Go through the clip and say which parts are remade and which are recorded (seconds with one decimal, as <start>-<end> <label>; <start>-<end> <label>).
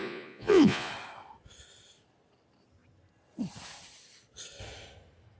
0.0-0.9 remade; 0.9-5.4 recorded